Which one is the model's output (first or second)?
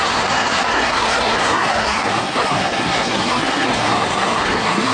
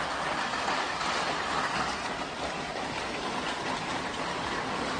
first